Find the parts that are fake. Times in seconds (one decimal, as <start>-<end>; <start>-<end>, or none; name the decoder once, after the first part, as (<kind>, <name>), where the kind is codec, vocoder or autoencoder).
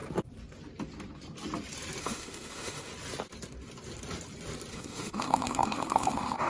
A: 2.0-2.9 (autoencoder, DAC-VAE); 4.7-6.5